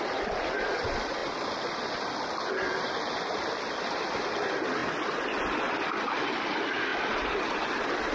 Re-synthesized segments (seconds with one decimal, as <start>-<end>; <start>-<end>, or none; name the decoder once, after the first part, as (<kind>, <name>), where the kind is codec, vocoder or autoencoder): 1.2-2.1 (vocoder, BigVGAN v2)